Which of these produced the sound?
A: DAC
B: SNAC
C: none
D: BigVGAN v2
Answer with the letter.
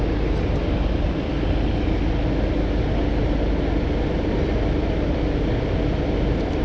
C